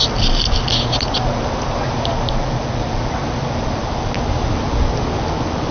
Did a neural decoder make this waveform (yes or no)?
no